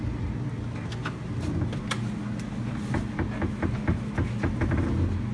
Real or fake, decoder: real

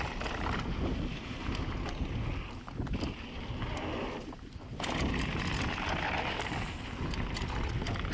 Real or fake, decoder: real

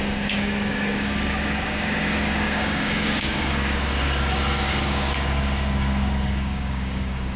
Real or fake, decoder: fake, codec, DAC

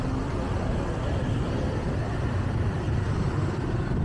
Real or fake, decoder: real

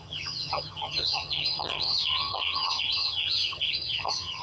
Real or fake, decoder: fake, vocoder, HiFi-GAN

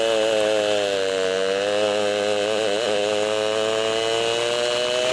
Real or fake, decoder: real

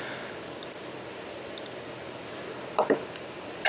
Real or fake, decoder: real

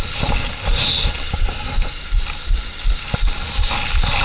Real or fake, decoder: real